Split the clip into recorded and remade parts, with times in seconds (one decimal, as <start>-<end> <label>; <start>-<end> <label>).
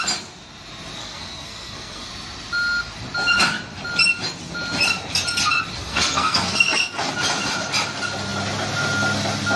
0.0-1.0 recorded; 1.0-2.1 remade; 2.1-5.8 recorded; 5.8-7.1 remade; 7.1-9.6 recorded